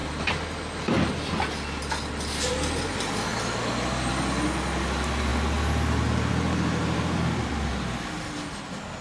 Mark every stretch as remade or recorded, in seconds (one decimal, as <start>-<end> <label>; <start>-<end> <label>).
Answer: 0.0-6.8 recorded; 6.8-7.7 remade; 7.7-9.0 recorded